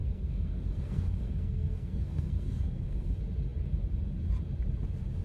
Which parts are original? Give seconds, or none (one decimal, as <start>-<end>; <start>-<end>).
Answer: 3.1-5.2